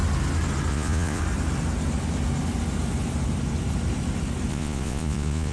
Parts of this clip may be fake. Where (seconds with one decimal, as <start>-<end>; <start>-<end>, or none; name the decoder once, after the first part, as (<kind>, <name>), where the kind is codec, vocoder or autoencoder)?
0.7-1.2 (vocoder, Vocos); 4.5-5.5